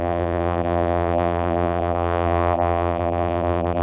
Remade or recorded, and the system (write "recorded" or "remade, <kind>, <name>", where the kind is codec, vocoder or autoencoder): remade, vocoder, BigVGAN v2